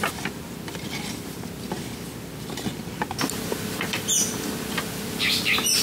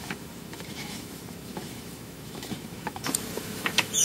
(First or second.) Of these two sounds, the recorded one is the first